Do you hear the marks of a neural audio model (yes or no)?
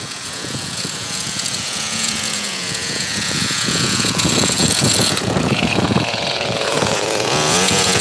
yes